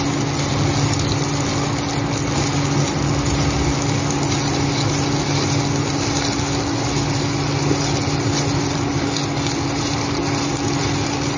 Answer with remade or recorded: recorded